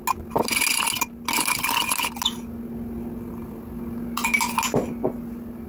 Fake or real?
real